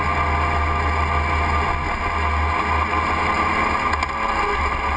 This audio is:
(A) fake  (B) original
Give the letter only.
B